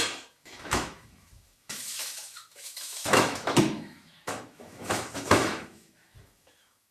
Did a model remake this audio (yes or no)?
yes